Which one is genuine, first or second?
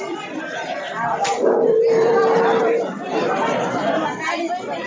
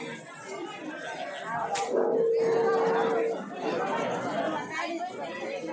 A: second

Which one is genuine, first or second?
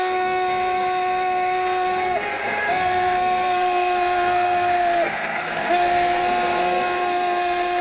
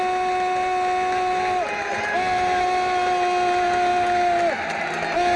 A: second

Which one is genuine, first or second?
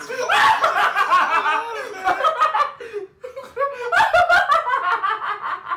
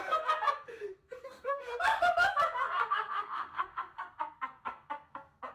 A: first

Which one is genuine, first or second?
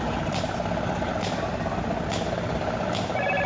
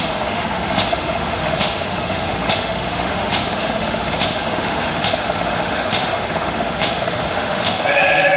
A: first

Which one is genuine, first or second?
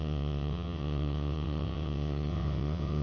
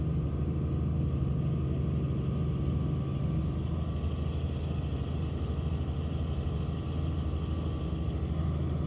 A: second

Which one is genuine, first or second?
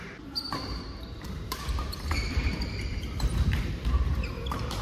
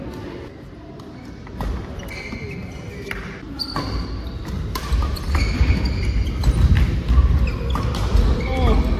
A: second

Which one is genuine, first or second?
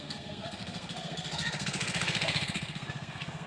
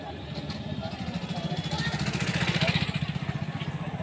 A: second